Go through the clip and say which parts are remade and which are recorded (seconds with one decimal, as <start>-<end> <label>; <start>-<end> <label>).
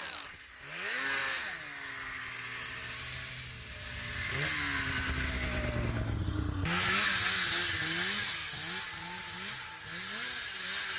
0.0-11.0 recorded